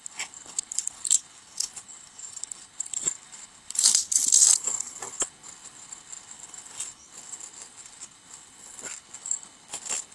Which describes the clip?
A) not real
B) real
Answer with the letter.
A